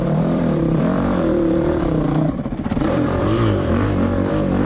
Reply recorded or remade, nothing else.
remade